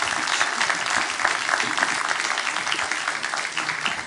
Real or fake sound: real